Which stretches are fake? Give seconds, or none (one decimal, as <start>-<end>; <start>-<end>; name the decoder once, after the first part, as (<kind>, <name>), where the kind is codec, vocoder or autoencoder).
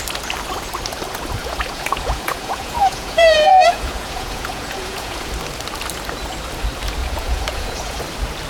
1.4-5.3 (vocoder, Vocos); 7.0-8.0